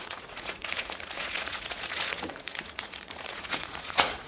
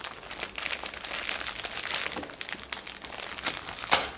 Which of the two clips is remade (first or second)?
first